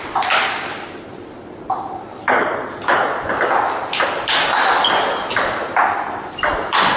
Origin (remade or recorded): recorded